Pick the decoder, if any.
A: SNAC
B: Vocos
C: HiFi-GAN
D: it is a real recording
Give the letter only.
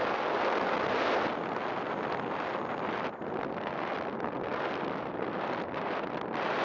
D